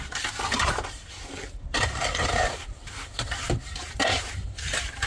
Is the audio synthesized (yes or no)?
yes